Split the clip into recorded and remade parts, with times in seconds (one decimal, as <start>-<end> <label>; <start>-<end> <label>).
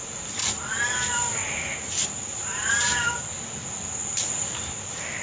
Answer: 0.0-0.4 remade; 0.4-1.9 recorded; 1.9-5.2 remade